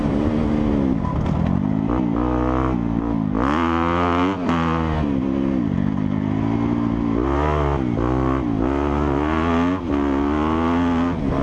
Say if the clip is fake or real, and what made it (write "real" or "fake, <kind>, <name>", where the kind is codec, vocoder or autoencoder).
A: real